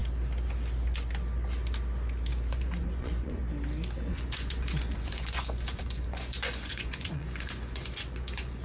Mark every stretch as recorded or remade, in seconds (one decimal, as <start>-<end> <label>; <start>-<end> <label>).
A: 0.0-2.5 recorded; 2.5-3.4 remade; 3.4-4.1 recorded; 4.1-8.6 remade